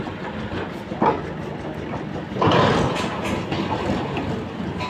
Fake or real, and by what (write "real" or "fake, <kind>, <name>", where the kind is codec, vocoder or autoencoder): real